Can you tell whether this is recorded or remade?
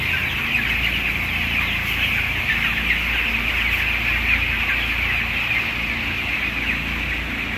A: recorded